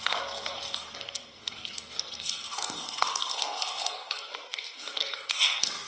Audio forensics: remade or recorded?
remade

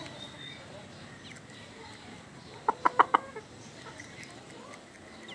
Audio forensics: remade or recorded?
recorded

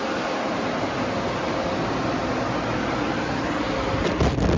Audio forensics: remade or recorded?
recorded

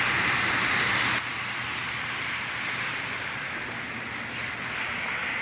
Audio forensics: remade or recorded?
recorded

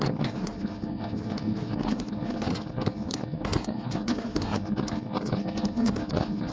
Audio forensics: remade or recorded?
remade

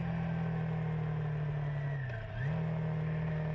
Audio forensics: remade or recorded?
recorded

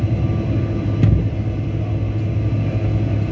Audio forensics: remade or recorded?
recorded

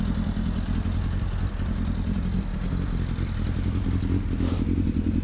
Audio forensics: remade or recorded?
recorded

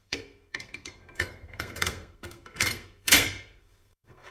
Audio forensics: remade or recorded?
remade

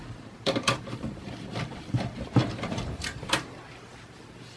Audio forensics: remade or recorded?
remade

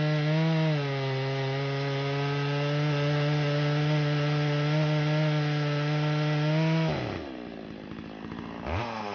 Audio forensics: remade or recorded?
recorded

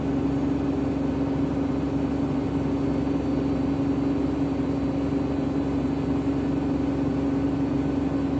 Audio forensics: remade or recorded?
recorded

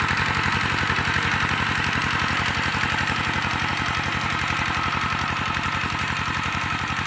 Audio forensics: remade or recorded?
recorded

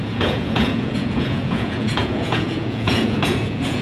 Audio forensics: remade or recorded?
remade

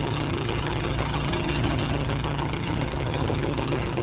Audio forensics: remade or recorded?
remade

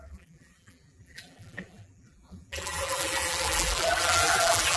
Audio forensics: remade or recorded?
remade